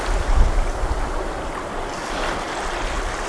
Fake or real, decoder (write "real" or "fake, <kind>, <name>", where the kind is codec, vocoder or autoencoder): real